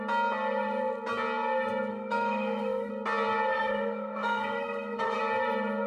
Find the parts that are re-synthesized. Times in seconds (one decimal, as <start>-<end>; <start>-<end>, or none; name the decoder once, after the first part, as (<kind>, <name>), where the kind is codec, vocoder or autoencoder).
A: 1.9-2.9 (codec, SNAC); 3.5-5.2